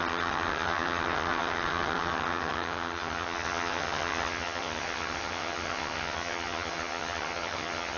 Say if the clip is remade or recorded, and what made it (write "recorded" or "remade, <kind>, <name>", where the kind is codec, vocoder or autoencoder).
remade, vocoder, HiFi-GAN